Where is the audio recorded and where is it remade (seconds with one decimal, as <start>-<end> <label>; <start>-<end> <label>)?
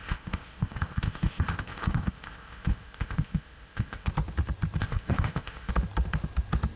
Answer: 0.0-4.1 remade; 4.1-4.8 recorded; 4.8-5.7 remade; 5.7-6.8 recorded